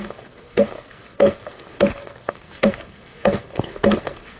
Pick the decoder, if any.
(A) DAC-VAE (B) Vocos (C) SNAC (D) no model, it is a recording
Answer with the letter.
C